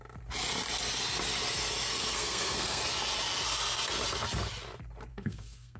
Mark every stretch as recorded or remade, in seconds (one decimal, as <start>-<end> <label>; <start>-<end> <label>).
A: 0.0-1.9 recorded; 1.9-2.8 remade; 2.8-5.1 recorded; 5.1-5.8 remade

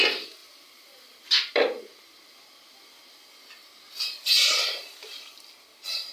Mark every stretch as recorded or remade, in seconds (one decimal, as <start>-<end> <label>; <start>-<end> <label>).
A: 0.0-6.1 recorded